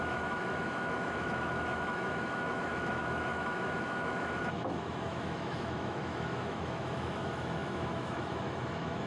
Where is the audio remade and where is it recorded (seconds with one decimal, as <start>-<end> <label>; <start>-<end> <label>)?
0.0-9.1 remade